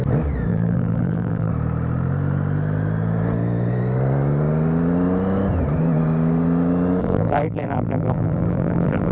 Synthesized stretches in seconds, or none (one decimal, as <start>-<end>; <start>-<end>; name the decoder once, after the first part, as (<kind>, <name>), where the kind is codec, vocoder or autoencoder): 0.5-1.5 (vocoder, BigVGAN v2); 7.0-9.1